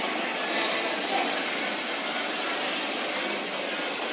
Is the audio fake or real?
real